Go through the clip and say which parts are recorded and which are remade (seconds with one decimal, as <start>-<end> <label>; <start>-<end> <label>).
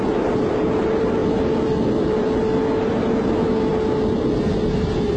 0.0-5.2 recorded